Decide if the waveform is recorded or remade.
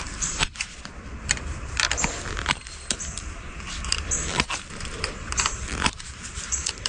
remade